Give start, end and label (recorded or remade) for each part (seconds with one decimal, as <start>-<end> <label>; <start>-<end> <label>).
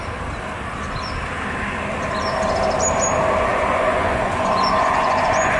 0.0-3.4 recorded; 3.4-5.6 remade